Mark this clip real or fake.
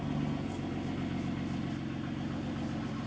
real